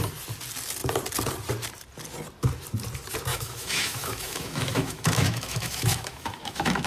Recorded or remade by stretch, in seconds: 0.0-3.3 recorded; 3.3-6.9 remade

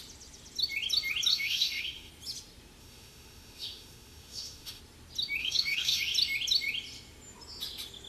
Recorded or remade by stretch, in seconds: 0.0-1.3 recorded; 1.3-2.1 remade; 2.1-2.8 recorded; 2.8-4.8 remade; 4.8-5.4 recorded; 5.4-6.0 remade; 6.0-8.1 recorded

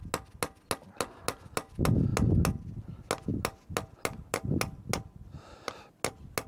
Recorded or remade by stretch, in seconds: 0.0-6.5 recorded

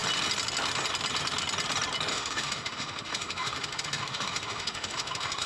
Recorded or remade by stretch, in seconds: 0.0-2.1 recorded; 2.1-5.5 remade